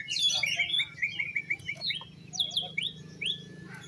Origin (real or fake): real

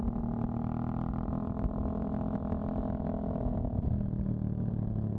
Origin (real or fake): real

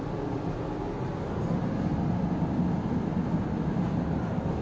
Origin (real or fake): real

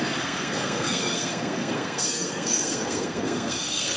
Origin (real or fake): fake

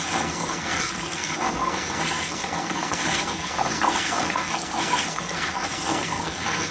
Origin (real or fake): fake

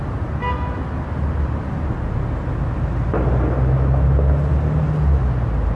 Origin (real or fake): real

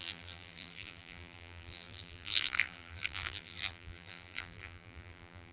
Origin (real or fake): fake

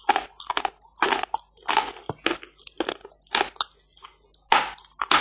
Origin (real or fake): real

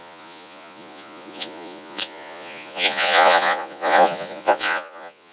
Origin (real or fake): fake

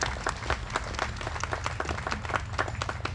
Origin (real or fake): real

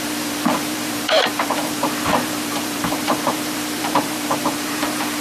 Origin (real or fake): fake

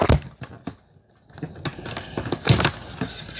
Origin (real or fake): real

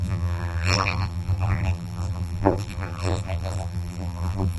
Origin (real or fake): fake